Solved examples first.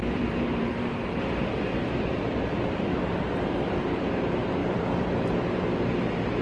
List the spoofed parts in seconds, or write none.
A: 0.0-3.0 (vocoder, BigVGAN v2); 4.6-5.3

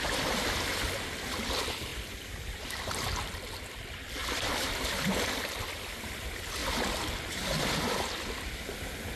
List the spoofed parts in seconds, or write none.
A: 1.9-2.6 (vocoder, BigVGAN v2); 4.2-5.4; 6.6-7.1

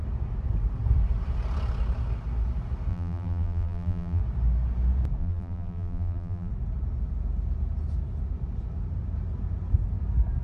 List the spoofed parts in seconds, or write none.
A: 2.9-4.2 (vocoder, BigVGAN v2); 5.2-6.5

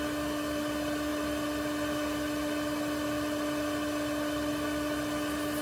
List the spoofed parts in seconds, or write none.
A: none

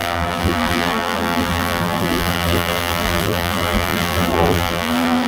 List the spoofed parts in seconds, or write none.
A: 0.0-5.3 (vocoder, BigVGAN v2)

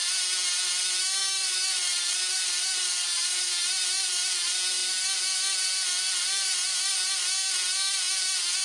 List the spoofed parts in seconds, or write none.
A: 1.2-3.5 (vocoder, BigVGAN v2)